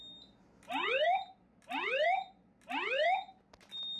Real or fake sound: real